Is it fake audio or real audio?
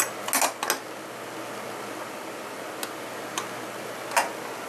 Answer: real